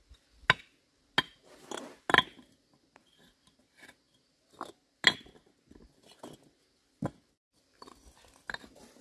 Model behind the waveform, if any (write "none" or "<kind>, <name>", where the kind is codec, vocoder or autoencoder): none